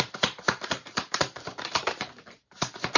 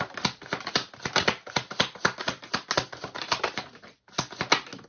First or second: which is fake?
first